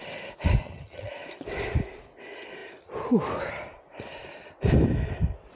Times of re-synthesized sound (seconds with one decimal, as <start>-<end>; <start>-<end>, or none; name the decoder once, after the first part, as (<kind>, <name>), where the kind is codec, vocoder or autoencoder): 0.6-1.1 (vocoder, HiFi-GAN)